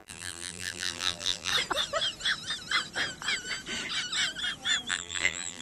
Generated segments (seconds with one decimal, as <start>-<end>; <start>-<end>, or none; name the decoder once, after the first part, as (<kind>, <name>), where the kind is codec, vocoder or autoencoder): 0.0-1.5 (vocoder, BigVGAN v2); 4.9-5.6